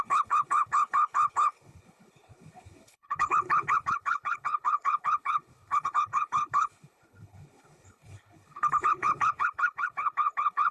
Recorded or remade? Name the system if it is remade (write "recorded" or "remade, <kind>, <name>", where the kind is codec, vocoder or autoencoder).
remade, codec, HILCodec